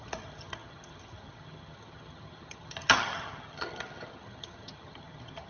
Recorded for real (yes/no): no